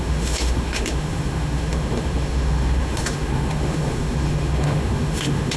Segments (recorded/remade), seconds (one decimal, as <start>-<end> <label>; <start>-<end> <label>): 0.0-5.6 remade